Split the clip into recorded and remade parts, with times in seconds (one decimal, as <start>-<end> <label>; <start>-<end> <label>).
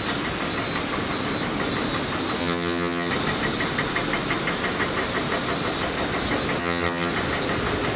0.0-2.4 recorded; 2.4-3.1 remade; 3.1-6.6 recorded; 6.6-7.1 remade; 7.1-8.0 recorded